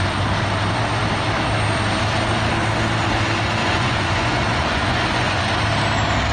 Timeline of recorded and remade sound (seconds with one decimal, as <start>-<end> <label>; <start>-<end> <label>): 0.0-3.6 recorded; 3.6-5.5 remade; 5.5-6.3 recorded